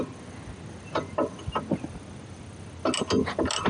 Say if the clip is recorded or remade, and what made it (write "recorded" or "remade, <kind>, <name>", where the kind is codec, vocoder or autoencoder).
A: recorded